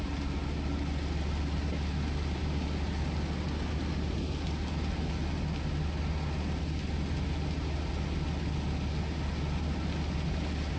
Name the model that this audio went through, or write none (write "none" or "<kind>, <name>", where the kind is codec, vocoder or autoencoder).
none